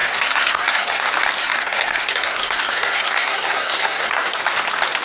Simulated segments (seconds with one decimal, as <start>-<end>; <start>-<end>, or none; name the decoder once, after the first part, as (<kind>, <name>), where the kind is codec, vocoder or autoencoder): 0.0-1.0 (codec, SNAC); 1.4-4.4